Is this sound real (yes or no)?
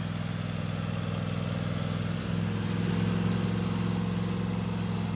yes